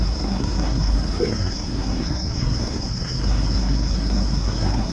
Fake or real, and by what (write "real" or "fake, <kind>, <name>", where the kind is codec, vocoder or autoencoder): fake, codec, SNAC